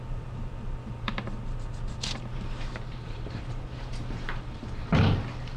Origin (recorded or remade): remade